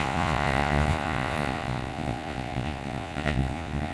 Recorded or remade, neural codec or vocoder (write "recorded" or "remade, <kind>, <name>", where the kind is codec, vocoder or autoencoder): remade, vocoder, Vocos